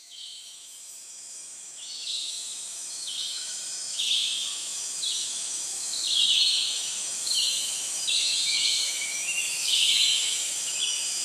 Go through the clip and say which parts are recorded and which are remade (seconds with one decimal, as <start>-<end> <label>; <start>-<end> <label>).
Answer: 0.0-11.2 remade